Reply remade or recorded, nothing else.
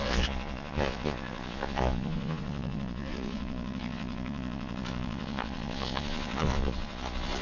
remade